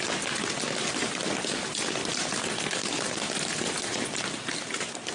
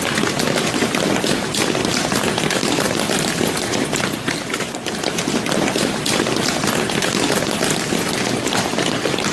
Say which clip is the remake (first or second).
second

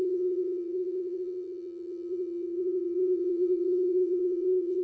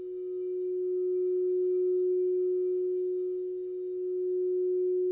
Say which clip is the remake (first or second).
first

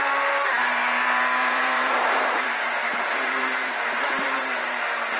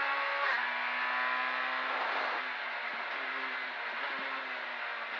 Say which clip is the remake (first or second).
first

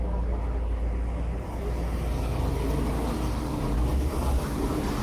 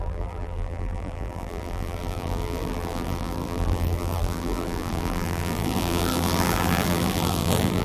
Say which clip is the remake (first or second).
second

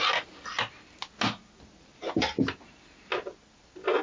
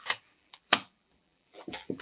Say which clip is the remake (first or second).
second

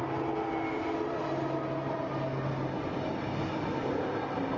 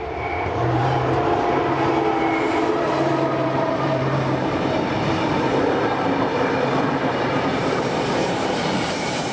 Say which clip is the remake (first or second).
second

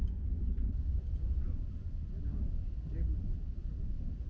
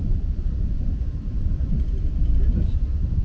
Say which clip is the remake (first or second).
second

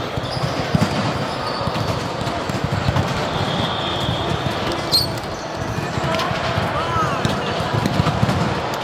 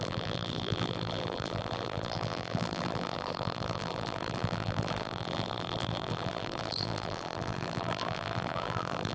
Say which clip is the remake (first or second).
second